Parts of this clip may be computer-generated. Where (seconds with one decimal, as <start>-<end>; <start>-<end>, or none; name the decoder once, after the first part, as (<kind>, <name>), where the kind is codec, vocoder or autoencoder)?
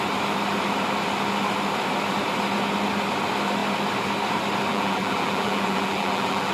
4.7-6.5 (vocoder, BigVGAN v2)